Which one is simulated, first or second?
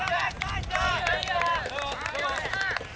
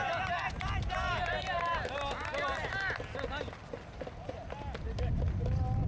first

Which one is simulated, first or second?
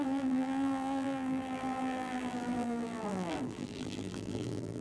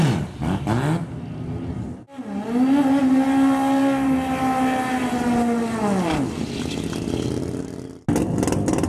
first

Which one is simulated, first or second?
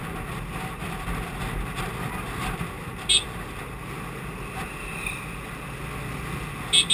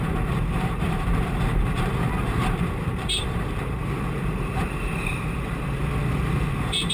second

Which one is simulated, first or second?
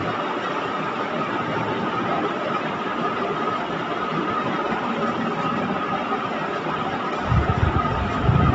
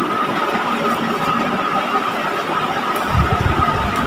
first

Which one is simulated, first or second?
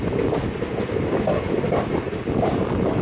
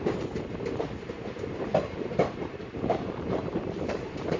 second